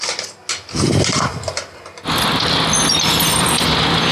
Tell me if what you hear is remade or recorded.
recorded